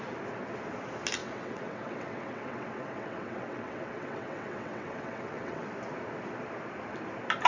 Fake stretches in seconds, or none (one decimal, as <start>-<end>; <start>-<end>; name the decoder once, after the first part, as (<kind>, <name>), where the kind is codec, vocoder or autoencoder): 1.2-5.7 (vocoder, WaveNeXt)